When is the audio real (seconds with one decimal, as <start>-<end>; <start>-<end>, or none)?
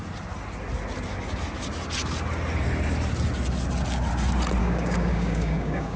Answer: 0.0-4.6